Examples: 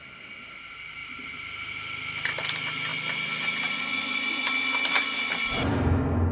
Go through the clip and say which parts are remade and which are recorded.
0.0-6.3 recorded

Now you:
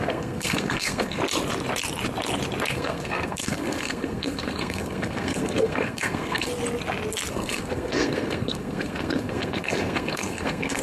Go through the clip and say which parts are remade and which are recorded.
0.0-1.2 remade; 1.2-2.7 recorded; 2.7-6.5 remade; 6.5-7.3 recorded; 7.3-10.8 remade

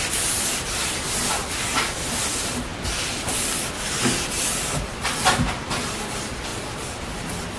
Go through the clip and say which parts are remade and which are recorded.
0.0-7.6 recorded

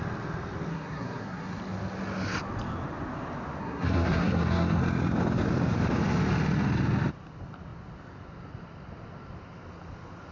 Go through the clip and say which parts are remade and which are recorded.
0.0-0.7 recorded; 0.7-1.6 remade; 1.6-3.6 recorded; 3.6-4.8 remade; 4.8-10.3 recorded

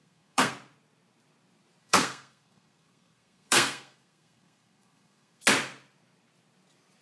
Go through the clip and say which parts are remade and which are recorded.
0.0-0.5 remade; 0.5-1.8 recorded; 1.8-5.4 remade; 5.4-7.0 recorded

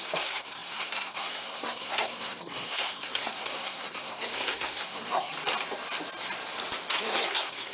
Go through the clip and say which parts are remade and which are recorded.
0.0-5.3 remade; 5.3-7.0 recorded; 7.0-7.7 remade

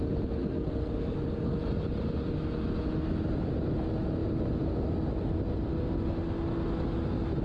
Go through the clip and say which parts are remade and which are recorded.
0.0-0.4 recorded; 0.4-1.2 remade; 1.2-7.4 recorded

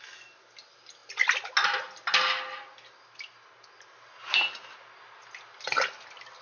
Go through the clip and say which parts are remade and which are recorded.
0.0-6.4 recorded